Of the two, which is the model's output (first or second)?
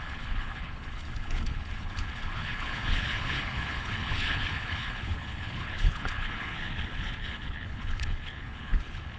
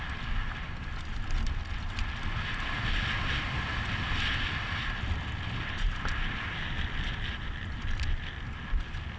first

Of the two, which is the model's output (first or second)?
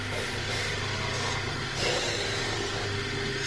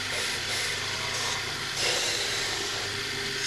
second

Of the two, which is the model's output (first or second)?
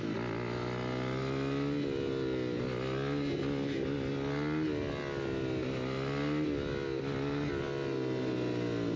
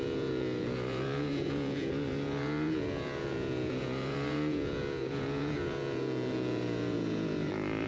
second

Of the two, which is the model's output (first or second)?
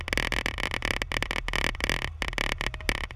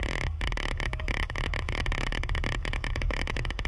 second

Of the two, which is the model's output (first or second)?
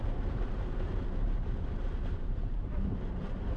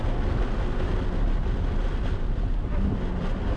first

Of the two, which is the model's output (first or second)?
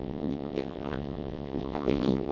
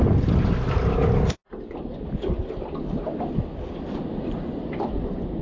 first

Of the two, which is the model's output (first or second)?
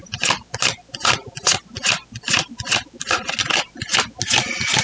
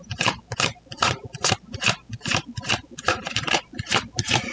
second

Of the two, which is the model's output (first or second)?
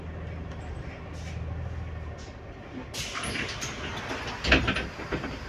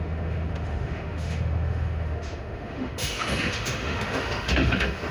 second